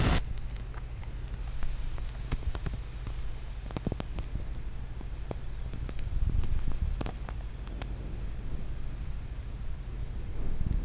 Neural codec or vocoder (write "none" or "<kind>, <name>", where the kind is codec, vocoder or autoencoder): none